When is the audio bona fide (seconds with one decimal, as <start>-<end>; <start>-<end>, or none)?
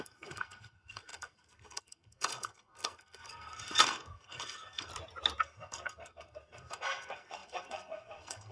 4.9-5.4